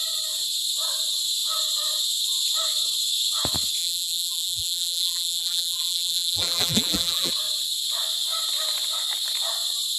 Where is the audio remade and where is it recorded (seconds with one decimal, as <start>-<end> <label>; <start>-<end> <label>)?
0.0-3.8 recorded; 3.8-7.3 remade; 7.3-10.0 recorded